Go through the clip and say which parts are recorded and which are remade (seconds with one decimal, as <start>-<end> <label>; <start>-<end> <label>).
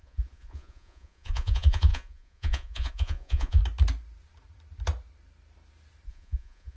0.0-3.6 remade; 3.6-6.1 recorded; 6.1-6.8 remade